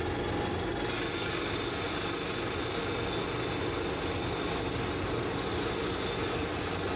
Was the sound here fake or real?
real